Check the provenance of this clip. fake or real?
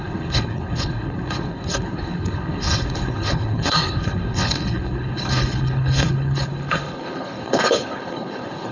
fake